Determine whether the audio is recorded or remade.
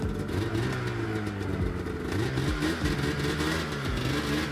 recorded